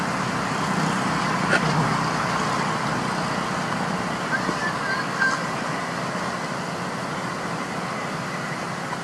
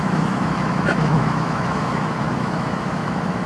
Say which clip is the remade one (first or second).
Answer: second